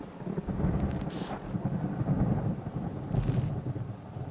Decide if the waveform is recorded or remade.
recorded